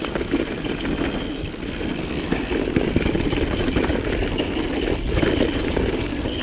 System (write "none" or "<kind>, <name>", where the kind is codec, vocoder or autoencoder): none